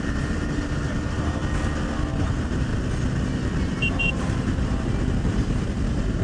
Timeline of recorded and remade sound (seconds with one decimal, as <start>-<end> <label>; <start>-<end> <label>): 0.0-1.4 remade; 1.4-2.2 recorded; 2.2-2.7 remade; 2.7-3.6 recorded; 3.6-6.2 remade